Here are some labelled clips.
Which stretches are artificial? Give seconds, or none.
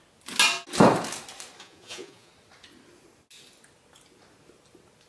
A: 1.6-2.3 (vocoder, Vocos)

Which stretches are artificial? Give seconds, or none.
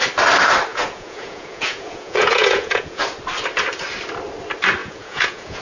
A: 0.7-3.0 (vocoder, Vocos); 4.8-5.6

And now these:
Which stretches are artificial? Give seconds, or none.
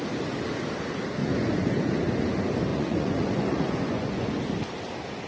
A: 1.2-1.9 (vocoder, Vocos); 2.7-4.3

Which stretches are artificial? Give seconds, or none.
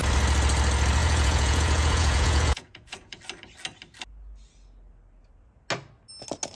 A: 1.0-3.2 (vocoder, Vocos)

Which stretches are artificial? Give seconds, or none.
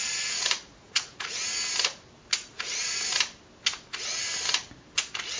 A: 0.0-1.4 (vocoder, Vocos); 2.4-3.2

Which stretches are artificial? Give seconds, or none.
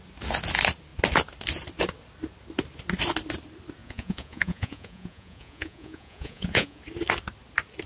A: 3.8-6.8 (vocoder, Vocos)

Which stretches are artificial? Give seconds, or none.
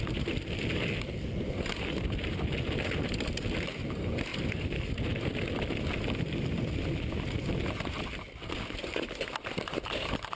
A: none